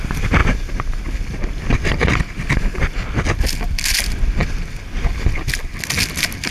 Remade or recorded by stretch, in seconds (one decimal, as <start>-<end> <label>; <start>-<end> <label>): 0.0-6.5 recorded